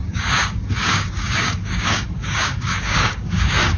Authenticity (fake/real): fake